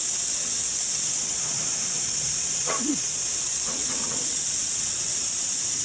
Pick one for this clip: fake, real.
fake